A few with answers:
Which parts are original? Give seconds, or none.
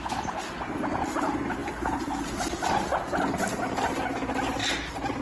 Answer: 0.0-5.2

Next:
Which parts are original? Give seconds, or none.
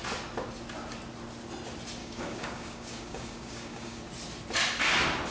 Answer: 0.0-2.0; 4.0-5.3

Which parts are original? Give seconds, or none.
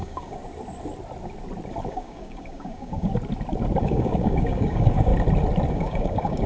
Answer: 0.4-1.9; 3.1-3.8; 5.1-5.7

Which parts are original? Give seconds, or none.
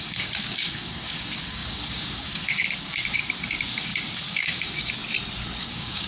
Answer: 5.0-5.6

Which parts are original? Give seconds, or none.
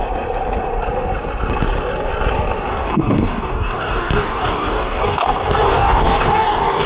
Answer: 0.0-2.7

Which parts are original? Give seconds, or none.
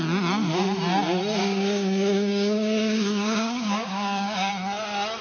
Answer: 0.0-1.4; 4.5-5.2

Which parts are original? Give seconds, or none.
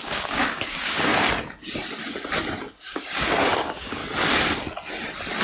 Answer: 1.1-2.8; 4.0-5.4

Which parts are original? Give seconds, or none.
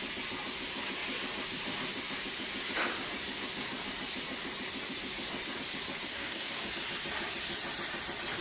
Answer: 0.0-6.1; 6.7-8.4